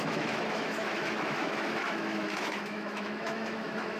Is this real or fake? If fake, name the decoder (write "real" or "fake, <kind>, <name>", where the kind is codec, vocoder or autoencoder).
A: fake, autoencoder, DAC-VAE